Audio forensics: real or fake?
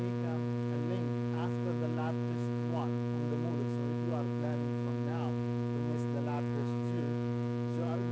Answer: real